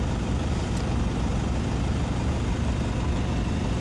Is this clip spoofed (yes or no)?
no